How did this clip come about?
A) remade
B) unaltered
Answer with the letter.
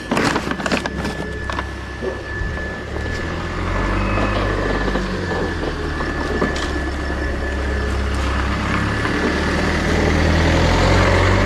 B